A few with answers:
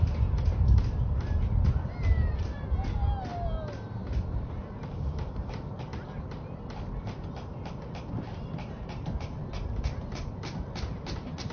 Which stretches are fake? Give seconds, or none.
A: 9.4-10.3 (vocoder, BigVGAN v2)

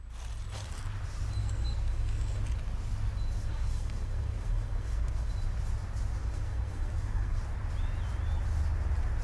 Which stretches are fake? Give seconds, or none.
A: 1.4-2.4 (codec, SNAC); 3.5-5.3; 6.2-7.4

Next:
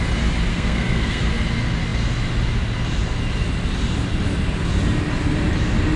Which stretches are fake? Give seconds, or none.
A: 0.5-1.2 (codec, SNAC)

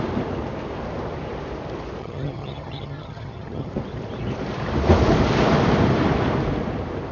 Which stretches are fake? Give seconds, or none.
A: 2.0-3.7 (vocoder, HiFi-GAN)

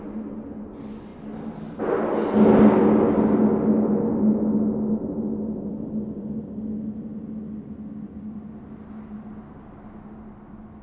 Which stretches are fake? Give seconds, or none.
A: none